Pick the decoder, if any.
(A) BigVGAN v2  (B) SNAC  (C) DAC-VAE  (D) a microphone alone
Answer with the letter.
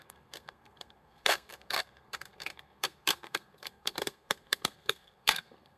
B